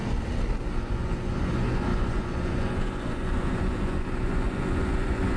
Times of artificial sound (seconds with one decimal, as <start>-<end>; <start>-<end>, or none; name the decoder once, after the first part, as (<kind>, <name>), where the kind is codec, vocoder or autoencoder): 0.8-5.4 (vocoder, Vocos)